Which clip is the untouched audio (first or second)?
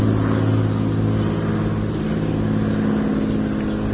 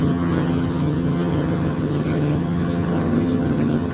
first